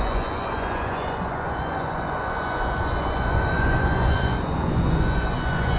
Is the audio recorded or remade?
remade